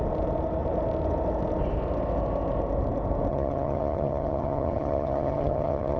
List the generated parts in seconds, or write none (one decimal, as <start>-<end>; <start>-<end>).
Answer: 3.3-6.0